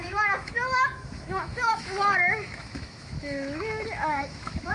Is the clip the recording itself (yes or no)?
no